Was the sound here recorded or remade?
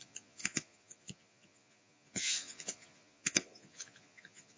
remade